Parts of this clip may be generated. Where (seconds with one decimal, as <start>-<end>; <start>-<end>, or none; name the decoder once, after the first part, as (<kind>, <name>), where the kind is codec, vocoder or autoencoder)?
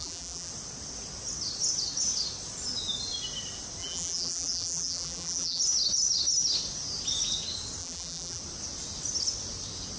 0.0-0.5 (vocoder, BigVGAN v2); 3.8-5.6; 7.8-8.4